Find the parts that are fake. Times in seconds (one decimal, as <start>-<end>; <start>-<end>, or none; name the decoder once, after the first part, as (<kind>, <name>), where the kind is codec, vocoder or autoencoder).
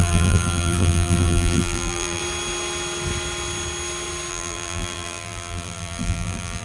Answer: 0.0-2.2 (vocoder, BigVGAN v2); 4.3-6.6